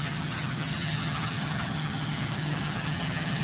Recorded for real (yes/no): no